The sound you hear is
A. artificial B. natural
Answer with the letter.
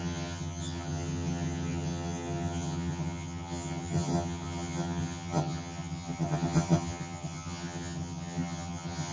A